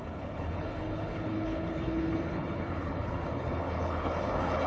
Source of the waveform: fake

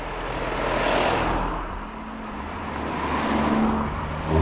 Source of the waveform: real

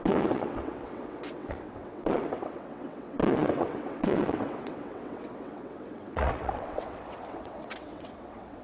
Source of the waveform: fake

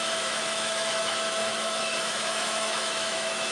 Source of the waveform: fake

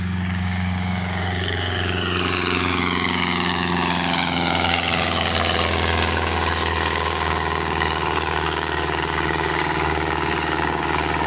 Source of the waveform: fake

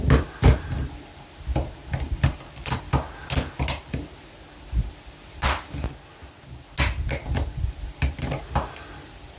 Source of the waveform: real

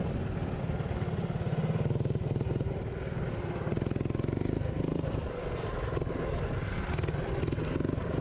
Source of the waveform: real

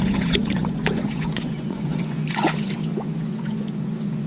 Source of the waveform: fake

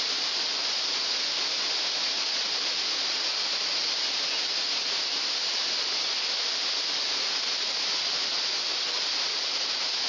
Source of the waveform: real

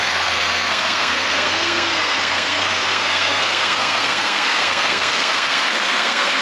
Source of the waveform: fake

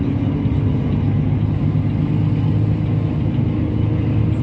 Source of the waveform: real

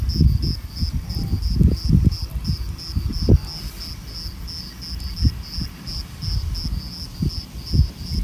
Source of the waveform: real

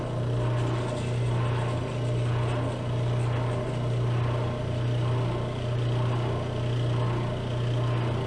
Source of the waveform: real